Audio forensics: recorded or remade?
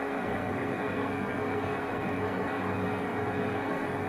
remade